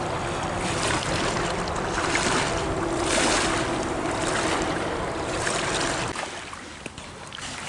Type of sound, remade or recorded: remade